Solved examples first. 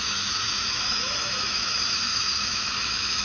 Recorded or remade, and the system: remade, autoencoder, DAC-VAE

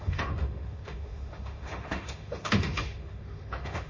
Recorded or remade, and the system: remade, autoencoder, DAC-VAE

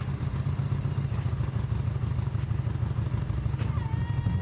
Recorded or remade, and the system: recorded